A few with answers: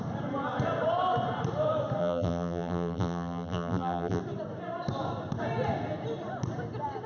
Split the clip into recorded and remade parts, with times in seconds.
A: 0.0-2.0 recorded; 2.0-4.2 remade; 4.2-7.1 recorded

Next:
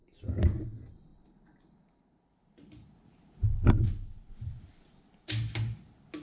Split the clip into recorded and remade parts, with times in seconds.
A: 0.0-1.1 recorded; 1.1-4.1 remade; 4.1-6.2 recorded

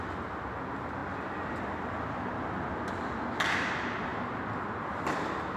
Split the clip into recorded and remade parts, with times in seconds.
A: 0.0-1.0 recorded; 1.0-2.7 remade; 2.7-5.6 recorded